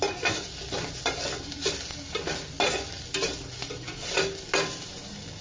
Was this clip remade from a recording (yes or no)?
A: no